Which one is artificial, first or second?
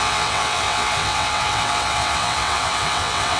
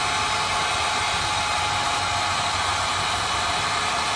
first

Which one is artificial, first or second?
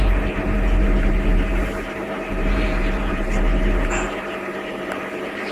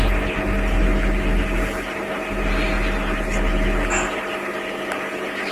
first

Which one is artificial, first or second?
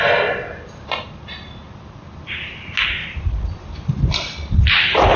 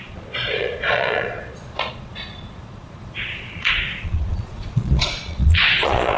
second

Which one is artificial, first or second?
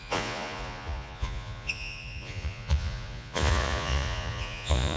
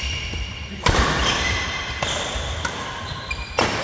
first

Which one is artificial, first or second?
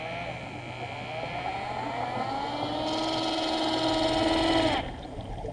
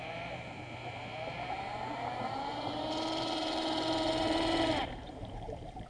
second